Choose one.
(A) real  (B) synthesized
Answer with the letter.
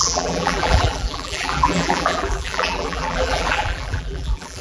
B